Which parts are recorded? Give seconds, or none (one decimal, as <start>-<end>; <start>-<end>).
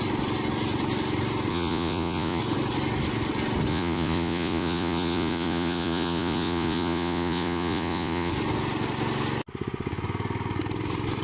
0.0-1.5; 2.4-3.7; 8.3-11.2